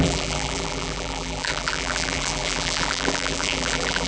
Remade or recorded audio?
remade